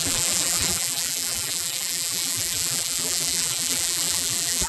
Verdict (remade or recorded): remade